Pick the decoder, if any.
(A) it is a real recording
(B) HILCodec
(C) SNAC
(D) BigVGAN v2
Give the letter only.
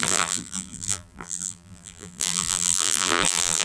D